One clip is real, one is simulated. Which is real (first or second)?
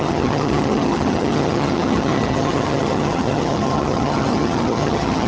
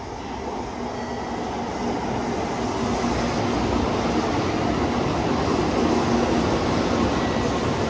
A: second